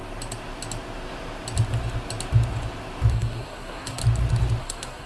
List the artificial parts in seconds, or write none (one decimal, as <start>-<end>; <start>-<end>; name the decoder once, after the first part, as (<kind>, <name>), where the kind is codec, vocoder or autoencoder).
3.1-4.0 (codec, SNAC); 4.6-5.1

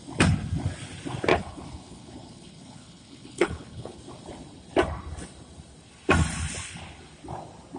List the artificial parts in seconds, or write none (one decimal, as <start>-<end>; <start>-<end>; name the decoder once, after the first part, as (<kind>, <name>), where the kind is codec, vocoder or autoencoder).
1.3-4.0 (codec, HILCodec)

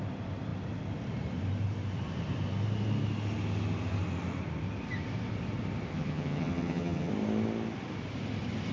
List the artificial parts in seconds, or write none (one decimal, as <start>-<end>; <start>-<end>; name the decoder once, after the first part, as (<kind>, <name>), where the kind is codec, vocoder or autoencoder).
5.9-7.1 (vocoder, HiFi-GAN)

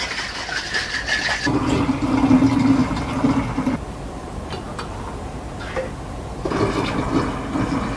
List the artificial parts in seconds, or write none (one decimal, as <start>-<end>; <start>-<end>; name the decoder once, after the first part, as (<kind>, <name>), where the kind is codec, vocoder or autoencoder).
none

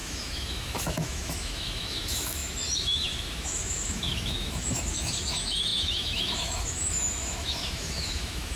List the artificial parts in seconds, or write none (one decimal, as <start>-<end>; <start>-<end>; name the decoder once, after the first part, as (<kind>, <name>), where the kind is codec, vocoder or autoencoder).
0.0-8.6 (autoencoder, DAC-VAE)

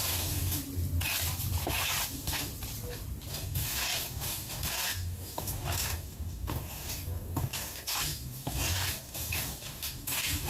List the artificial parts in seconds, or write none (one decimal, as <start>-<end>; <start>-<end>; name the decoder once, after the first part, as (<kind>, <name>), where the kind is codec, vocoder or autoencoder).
0.0-0.6 (codec, DAC); 2.1-2.5; 3.3-10.5

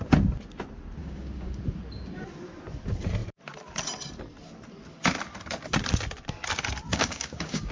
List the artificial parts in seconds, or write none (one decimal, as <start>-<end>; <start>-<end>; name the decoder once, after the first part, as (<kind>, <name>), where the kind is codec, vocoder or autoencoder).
1.0-1.6 (codec, DAC); 6.9-7.7